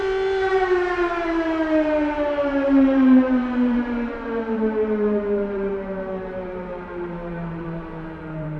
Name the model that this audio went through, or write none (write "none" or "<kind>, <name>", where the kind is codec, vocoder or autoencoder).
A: vocoder, BigVGAN v2